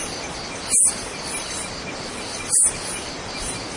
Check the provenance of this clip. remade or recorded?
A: recorded